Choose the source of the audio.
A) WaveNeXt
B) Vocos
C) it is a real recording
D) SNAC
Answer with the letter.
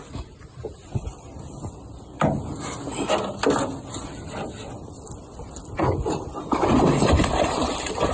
C